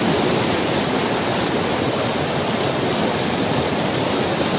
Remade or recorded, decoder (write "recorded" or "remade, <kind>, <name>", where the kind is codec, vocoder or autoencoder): recorded